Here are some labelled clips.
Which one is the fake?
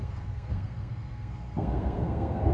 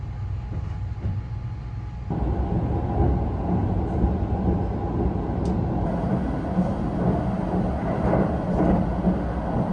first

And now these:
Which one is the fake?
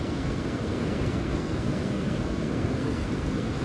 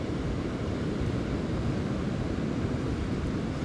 first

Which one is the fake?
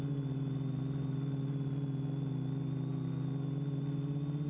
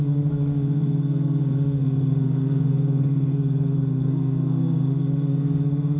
second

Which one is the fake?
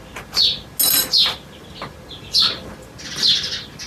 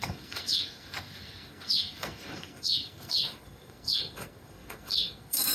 second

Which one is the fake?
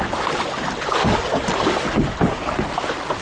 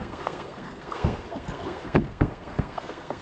second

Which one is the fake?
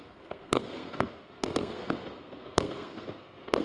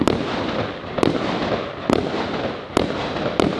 first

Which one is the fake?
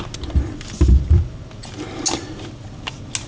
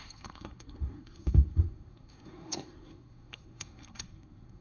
second